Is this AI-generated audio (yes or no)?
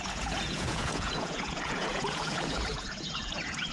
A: yes